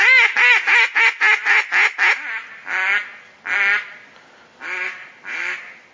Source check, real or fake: real